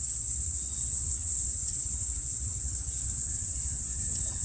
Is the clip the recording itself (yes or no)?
no